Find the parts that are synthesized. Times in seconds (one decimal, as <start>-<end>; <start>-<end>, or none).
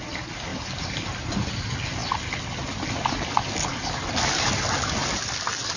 0.5-1.6